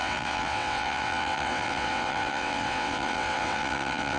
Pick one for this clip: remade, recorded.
remade